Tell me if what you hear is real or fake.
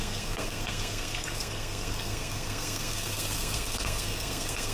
fake